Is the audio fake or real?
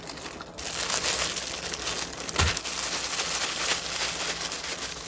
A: real